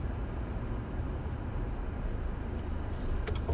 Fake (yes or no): no